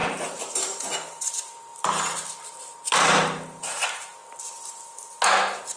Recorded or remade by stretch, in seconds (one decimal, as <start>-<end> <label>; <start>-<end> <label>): 0.0-1.7 remade; 1.7-2.6 recorded; 2.6-4.2 remade; 4.2-5.8 recorded